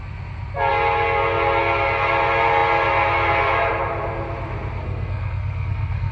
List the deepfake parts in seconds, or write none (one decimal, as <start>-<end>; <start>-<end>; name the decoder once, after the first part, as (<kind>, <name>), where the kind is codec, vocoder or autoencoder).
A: 4.8-6.1 (codec, SNAC)